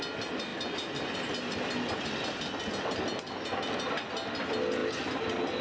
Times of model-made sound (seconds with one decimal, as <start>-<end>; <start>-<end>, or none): none